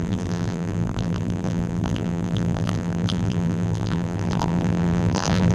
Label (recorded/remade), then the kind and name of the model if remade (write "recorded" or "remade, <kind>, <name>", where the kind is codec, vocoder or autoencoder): remade, vocoder, BigVGAN v2